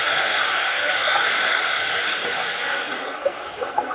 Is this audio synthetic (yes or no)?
yes